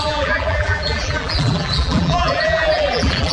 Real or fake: fake